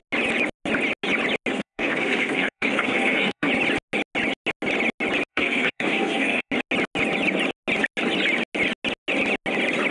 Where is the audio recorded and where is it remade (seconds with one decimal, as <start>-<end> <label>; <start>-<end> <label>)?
0.0-1.5 recorded; 1.5-3.5 remade; 3.5-5.3 recorded; 5.3-6.5 remade; 6.5-9.9 recorded

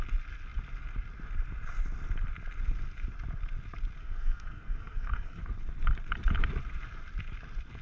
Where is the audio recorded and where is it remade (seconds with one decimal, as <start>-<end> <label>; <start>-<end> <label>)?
0.0-4.0 recorded; 4.0-5.4 remade; 5.4-7.8 recorded

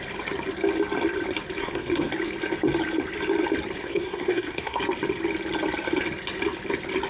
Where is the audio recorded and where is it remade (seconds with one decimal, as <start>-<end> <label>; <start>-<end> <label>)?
0.0-1.6 recorded; 1.6-2.1 remade; 2.1-3.8 recorded; 3.8-4.8 remade; 4.8-7.1 recorded

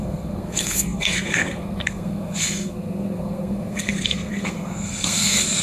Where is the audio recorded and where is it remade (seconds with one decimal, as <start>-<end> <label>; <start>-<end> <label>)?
0.0-5.6 remade

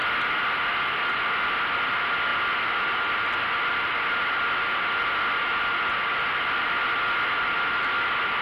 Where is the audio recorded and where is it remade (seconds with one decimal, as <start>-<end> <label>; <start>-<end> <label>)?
0.0-8.4 recorded

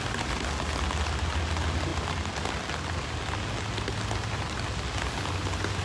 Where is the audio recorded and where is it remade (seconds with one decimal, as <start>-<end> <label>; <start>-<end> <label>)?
0.0-5.8 recorded

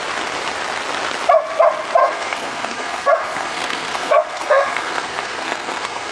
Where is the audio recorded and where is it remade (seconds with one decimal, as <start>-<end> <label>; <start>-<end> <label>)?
0.0-2.0 recorded; 2.0-6.1 remade

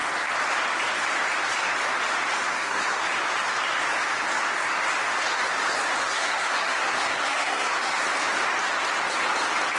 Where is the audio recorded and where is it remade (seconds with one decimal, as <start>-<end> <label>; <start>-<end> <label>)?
0.0-2.5 recorded; 2.5-3.0 remade; 3.0-6.0 recorded; 6.0-8.0 remade; 8.0-9.8 recorded